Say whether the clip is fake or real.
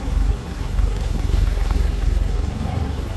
fake